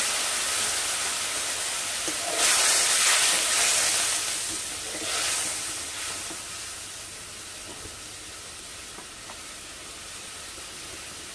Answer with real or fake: real